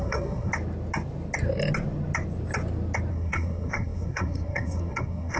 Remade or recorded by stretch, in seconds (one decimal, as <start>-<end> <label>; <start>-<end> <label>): 0.0-0.5 remade; 0.5-3.1 recorded; 3.1-5.4 remade